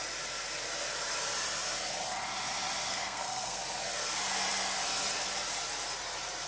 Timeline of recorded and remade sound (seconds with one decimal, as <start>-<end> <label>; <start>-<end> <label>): 0.0-2.9 recorded; 2.9-3.6 remade; 3.6-6.5 recorded